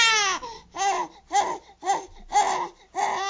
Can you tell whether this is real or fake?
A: real